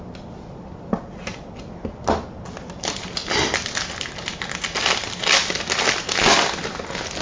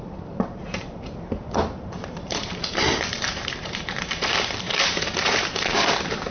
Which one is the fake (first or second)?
second